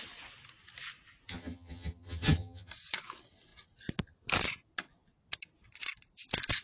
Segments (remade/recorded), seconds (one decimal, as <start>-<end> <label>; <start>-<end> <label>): 0.0-1.3 recorded; 1.3-2.7 remade; 2.7-6.6 recorded